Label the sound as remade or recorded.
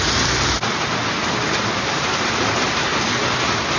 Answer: recorded